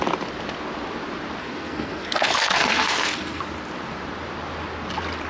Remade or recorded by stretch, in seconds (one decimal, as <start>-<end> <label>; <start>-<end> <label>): 0.0-1.4 recorded; 1.4-3.4 remade; 3.4-5.3 recorded